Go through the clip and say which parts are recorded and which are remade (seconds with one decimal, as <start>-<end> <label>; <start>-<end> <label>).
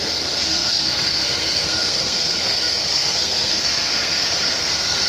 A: 0.0-5.1 remade